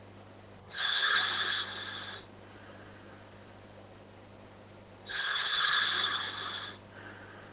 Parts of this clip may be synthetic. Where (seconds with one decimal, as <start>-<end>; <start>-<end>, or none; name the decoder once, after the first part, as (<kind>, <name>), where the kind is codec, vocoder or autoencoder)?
0.6-1.2 (codec, HILCodec); 5.1-5.8